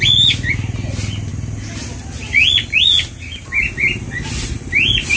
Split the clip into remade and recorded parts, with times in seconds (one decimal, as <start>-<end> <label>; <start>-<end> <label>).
0.0-5.2 recorded